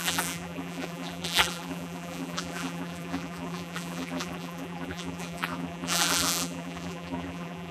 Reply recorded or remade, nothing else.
remade